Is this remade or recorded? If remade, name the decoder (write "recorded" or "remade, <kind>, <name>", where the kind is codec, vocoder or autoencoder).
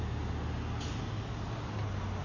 recorded